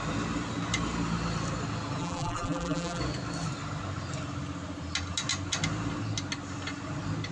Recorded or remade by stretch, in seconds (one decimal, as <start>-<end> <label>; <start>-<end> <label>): 0.0-2.0 recorded; 2.0-3.0 remade; 3.0-7.3 recorded